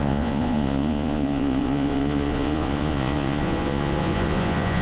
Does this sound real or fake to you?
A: fake